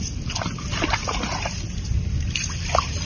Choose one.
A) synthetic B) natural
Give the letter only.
A